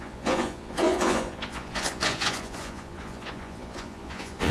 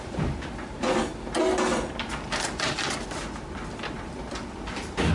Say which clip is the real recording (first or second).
second